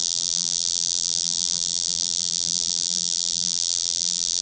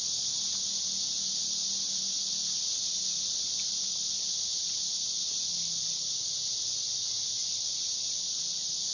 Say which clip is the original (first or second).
second